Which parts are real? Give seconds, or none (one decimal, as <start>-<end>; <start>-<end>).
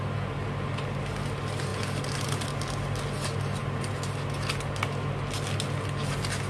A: 0.0-6.5